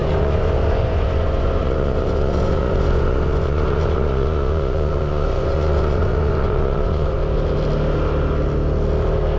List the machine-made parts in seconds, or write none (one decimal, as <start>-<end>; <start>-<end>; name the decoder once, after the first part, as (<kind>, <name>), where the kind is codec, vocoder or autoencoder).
0.0-7.2 (vocoder, Vocos)